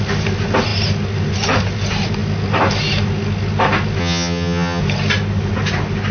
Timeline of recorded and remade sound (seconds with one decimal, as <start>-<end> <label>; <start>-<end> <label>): 0.0-4.0 recorded; 4.0-4.8 remade; 4.8-6.1 recorded